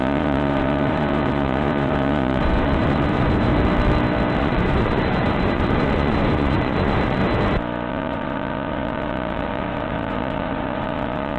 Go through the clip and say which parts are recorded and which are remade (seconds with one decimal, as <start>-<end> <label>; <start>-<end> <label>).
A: 0.0-3.5 remade; 3.5-4.4 recorded; 4.4-7.2 remade; 7.2-7.9 recorded; 7.9-11.4 remade